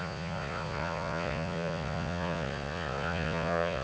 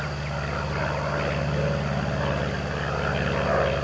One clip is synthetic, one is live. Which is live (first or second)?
second